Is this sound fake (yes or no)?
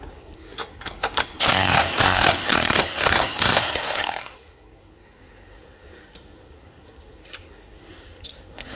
yes